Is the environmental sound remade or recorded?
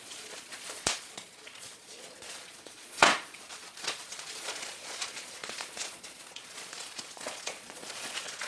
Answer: remade